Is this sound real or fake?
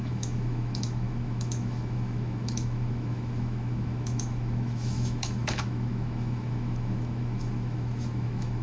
fake